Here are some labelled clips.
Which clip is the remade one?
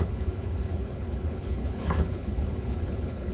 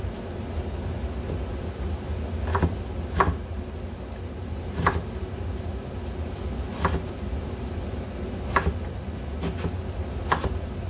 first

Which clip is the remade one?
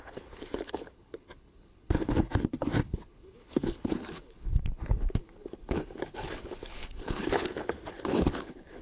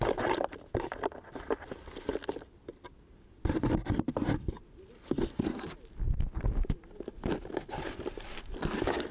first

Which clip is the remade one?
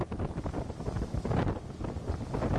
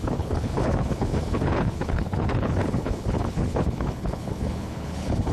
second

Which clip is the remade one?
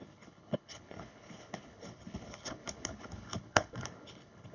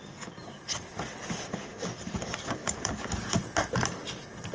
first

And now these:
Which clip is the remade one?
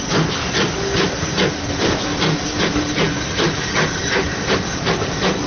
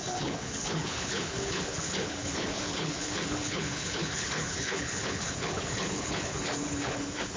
second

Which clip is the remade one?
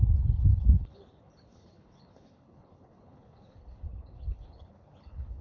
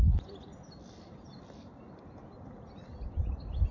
first